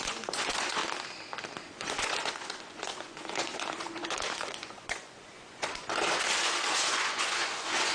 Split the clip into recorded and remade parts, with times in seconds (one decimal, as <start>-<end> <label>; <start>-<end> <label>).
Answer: 0.0-0.8 remade; 0.8-1.6 recorded; 1.6-7.9 remade